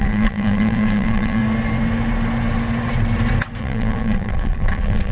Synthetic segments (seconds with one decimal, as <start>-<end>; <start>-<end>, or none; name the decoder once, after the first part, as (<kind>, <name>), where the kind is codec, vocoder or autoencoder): 0.0-1.4 (vocoder, WaveNeXt); 3.6-5.1